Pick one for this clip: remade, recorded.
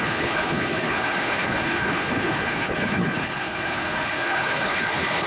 remade